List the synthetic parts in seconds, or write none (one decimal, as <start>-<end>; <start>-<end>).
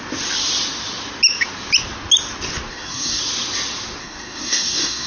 2.7-3.2; 4.0-5.1